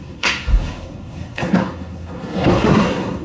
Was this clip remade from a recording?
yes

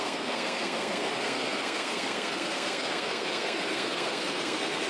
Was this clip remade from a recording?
yes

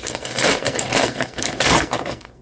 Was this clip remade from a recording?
yes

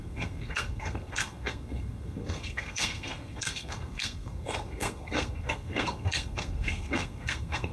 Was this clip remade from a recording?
yes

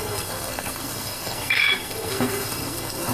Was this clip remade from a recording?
yes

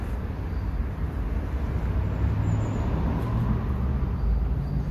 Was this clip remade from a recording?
no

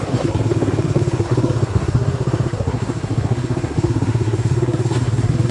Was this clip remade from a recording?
yes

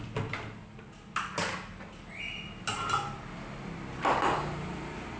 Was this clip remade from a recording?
no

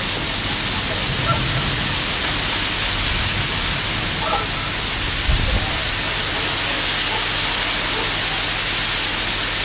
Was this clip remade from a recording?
no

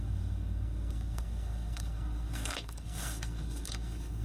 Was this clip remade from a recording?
yes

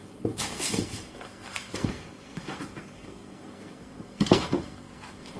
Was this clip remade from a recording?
yes